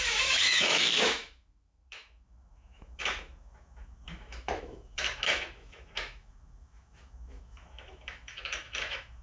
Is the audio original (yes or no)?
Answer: no